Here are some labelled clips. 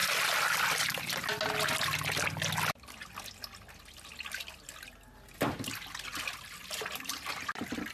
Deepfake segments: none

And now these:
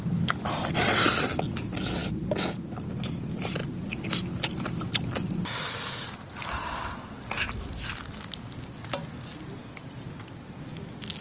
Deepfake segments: none

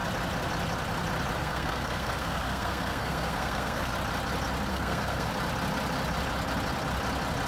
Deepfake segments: 1.4-3.9 (codec, SNAC); 4.7-5.3

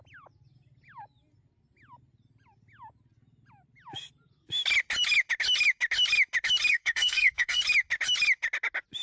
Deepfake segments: 6.7-7.6 (codec, SNAC)